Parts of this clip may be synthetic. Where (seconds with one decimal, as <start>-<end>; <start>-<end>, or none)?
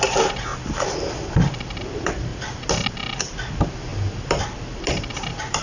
none